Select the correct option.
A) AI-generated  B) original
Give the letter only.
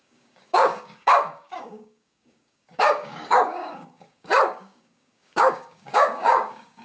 A